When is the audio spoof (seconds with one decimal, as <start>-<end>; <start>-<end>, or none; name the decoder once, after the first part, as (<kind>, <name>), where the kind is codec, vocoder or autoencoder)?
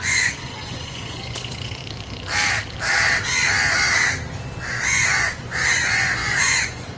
0.0-1.8 (vocoder, Vocos); 4.7-7.0